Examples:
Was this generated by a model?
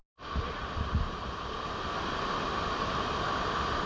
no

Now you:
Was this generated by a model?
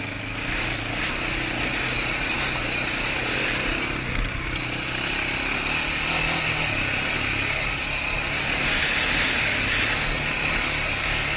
no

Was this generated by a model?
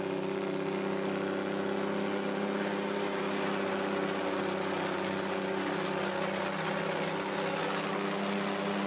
no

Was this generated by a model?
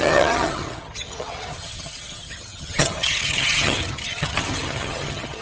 yes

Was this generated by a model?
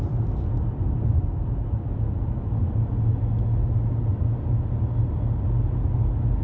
no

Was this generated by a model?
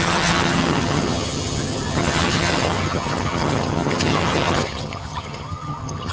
yes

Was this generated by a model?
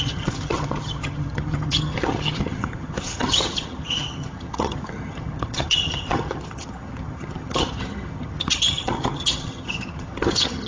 yes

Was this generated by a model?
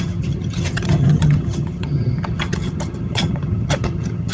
yes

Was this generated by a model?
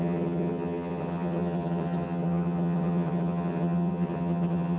yes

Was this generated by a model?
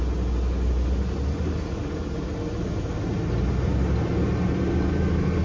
no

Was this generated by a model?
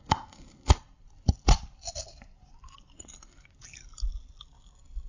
no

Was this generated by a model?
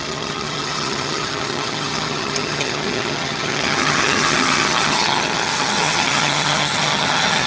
yes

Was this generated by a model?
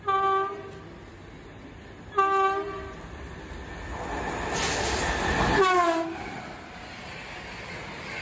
no